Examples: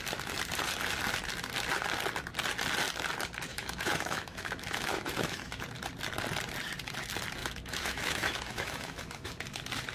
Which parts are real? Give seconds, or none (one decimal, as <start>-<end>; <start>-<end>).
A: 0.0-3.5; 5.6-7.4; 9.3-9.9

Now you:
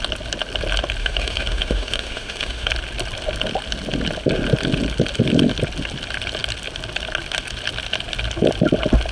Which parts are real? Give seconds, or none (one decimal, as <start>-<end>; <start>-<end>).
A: 0.0-1.0; 2.7-9.1

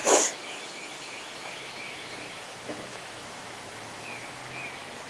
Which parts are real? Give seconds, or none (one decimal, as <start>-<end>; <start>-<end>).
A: 4.4-5.1